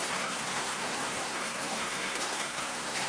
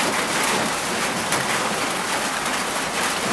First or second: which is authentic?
second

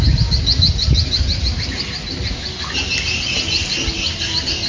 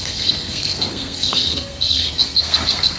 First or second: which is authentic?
first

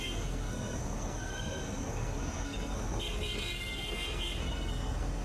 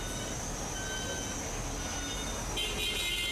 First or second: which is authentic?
second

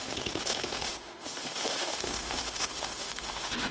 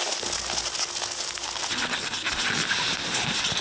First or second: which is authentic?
second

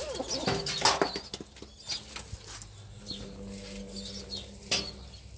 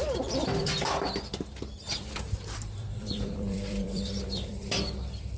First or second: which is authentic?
first